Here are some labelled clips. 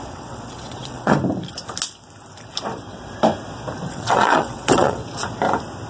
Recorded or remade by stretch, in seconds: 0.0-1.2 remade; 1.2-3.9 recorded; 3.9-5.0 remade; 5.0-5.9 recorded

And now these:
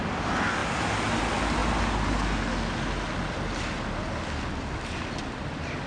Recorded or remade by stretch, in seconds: 0.0-5.9 recorded

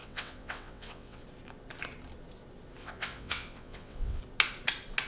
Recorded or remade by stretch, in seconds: 0.0-1.2 remade; 1.2-2.8 recorded; 2.8-4.2 remade; 4.2-5.1 recorded

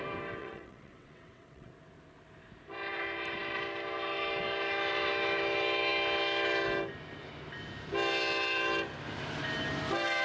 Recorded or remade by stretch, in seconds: 0.0-0.4 recorded; 0.4-1.7 remade; 1.7-10.2 recorded

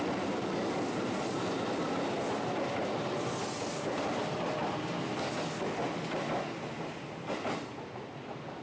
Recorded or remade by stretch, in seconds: 0.0-8.6 recorded